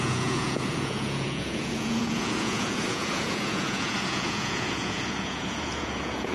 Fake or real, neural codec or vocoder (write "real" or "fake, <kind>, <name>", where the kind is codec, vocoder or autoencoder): fake, vocoder, Vocos